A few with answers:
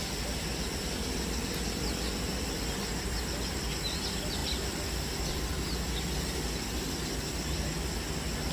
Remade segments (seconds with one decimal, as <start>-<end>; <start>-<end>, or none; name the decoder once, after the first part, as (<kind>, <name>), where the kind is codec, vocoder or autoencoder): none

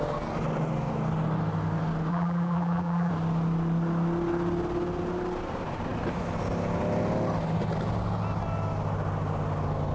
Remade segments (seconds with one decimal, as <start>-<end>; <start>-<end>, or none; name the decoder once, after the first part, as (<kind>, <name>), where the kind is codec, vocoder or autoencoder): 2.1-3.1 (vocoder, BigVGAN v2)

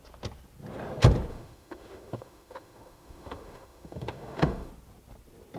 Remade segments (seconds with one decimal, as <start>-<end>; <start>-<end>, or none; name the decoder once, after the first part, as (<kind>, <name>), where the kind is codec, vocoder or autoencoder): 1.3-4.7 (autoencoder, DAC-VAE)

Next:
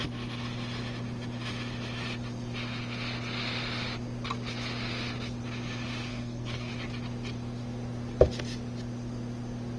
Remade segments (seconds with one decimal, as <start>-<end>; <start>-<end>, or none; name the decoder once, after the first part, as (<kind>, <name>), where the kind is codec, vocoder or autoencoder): 6.1-6.7 (codec, SNAC)